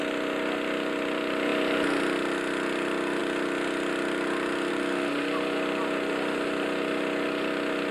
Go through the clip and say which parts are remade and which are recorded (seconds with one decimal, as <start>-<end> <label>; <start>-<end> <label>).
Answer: 0.0-7.9 recorded